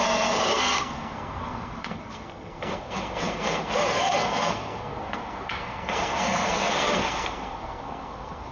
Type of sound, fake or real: fake